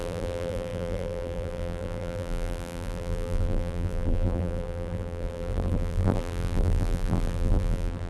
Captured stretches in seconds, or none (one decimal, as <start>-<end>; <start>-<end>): none